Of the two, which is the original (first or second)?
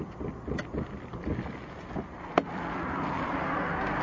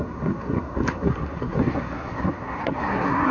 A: first